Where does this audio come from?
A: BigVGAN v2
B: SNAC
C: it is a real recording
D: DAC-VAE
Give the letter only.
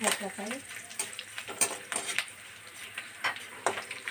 A